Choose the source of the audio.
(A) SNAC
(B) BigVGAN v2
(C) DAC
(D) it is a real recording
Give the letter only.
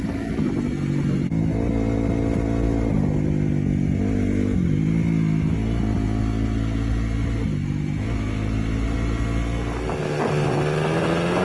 D